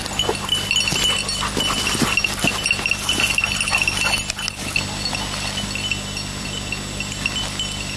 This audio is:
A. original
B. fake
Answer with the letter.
A